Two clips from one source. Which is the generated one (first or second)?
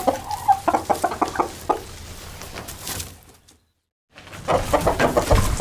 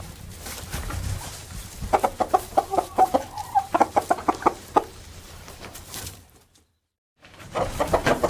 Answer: second